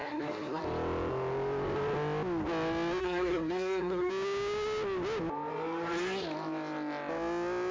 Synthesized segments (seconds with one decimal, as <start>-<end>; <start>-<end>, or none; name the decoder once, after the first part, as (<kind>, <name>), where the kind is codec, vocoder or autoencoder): 0.0-0.6 (codec, SNAC); 3.0-4.1